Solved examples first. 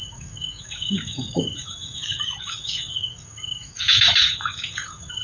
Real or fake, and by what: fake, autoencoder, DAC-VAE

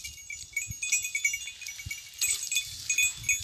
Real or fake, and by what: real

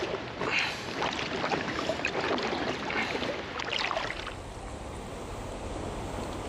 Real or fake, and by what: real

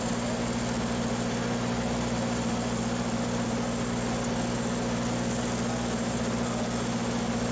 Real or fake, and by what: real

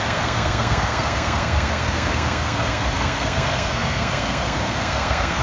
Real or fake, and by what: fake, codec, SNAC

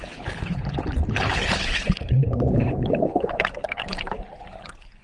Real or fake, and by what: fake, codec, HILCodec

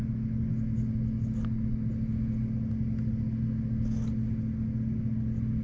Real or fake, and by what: real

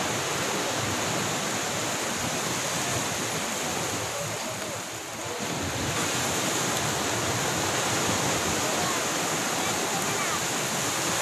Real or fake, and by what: real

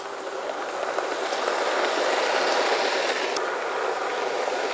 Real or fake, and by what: real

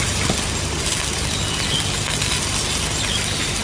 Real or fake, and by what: real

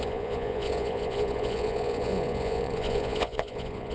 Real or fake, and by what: fake, vocoder, Vocos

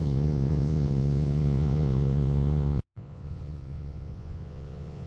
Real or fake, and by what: fake, vocoder, Vocos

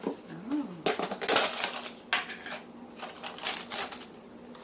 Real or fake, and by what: real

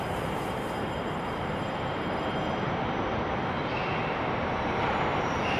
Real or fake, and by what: fake, vocoder, BigVGAN v2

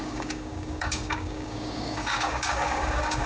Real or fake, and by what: fake, codec, DAC